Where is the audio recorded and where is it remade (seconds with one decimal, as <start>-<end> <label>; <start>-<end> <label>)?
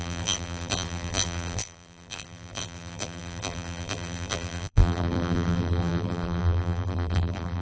0.0-7.6 remade